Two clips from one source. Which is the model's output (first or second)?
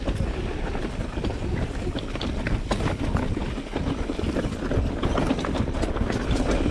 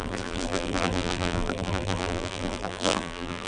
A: second